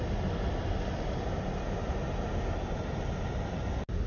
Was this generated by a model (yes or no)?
no